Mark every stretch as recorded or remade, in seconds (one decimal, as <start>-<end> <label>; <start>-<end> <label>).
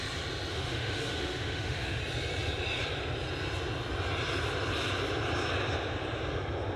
0.0-0.5 recorded; 0.5-2.0 remade; 2.0-6.8 recorded